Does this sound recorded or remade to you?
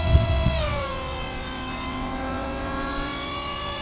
remade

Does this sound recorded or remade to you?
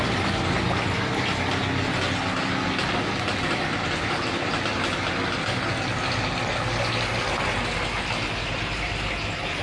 recorded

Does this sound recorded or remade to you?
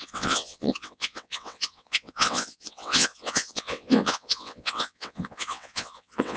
remade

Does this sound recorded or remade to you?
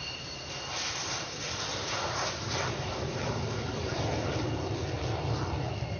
recorded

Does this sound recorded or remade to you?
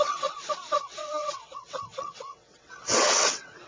remade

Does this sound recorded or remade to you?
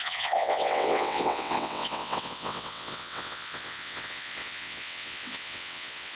remade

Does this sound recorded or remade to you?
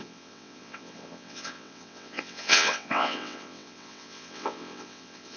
remade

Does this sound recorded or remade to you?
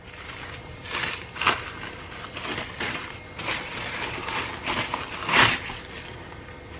recorded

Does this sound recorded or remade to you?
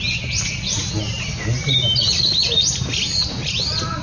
recorded